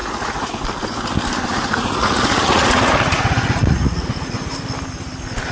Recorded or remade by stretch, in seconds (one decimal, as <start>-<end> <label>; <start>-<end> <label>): 0.0-0.5 remade; 0.5-1.5 recorded; 1.5-4.5 remade; 4.5-5.5 recorded

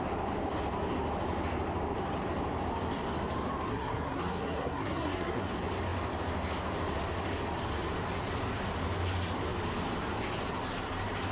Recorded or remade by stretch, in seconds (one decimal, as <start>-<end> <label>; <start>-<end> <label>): 0.0-3.7 recorded; 3.7-5.5 remade; 5.5-11.3 recorded

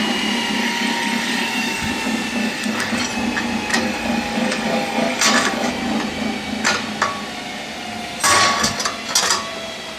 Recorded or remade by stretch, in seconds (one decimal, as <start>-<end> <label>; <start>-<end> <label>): 0.0-0.6 recorded; 0.6-1.9 remade; 1.9-2.4 recorded; 2.4-3.0 remade; 3.0-3.7 recorded; 3.7-5.7 remade; 5.7-8.2 recorded; 8.2-8.8 remade; 8.8-10.0 recorded

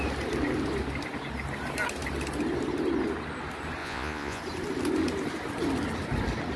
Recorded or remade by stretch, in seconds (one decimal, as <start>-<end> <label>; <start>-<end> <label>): 0.0-3.8 recorded; 3.8-4.4 remade; 4.4-6.6 recorded